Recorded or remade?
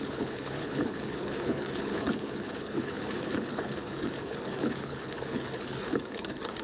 remade